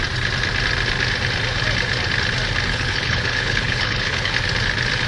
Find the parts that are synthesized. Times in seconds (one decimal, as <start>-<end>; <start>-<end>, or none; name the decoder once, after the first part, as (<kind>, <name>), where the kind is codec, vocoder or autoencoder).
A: 2.7-4.3 (codec, HILCodec)